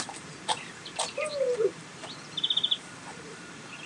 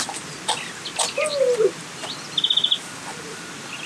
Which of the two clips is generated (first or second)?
first